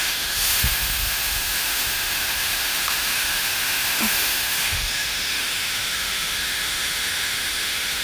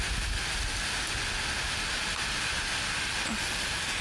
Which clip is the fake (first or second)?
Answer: first